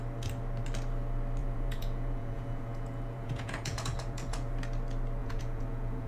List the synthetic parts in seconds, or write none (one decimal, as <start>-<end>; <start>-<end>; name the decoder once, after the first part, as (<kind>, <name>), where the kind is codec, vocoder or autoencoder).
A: 1.4-4.5 (vocoder, Vocos); 5.2-6.1